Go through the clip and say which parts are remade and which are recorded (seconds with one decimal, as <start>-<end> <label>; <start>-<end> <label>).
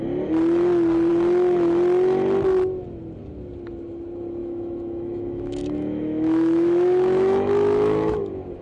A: 0.0-4.4 recorded; 4.4-8.2 remade; 8.2-8.6 recorded